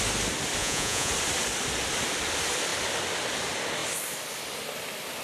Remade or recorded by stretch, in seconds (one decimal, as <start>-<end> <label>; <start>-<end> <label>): 0.0-0.6 recorded; 0.6-1.1 remade; 1.1-5.2 recorded